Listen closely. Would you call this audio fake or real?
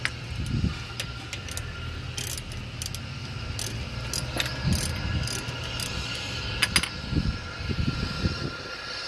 real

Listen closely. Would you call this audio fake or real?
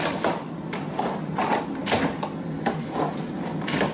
real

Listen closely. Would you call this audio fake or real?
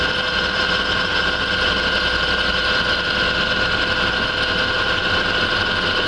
real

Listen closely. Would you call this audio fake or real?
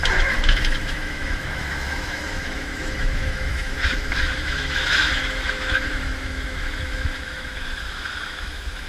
fake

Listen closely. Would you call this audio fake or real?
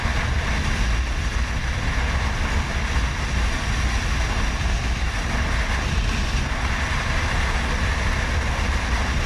real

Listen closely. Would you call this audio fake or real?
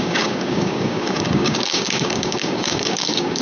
fake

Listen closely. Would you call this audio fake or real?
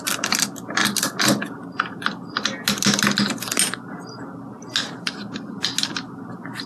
real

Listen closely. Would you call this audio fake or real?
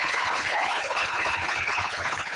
fake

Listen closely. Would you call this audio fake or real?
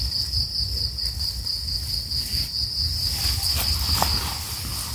real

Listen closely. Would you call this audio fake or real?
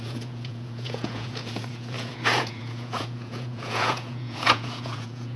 fake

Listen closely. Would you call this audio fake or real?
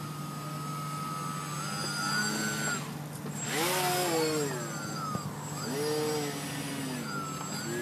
real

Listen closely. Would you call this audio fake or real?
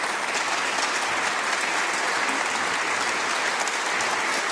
real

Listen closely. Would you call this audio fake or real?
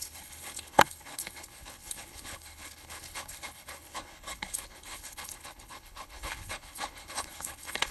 fake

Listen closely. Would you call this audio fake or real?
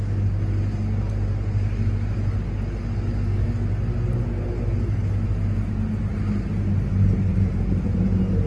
real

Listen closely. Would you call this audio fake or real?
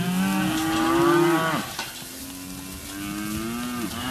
real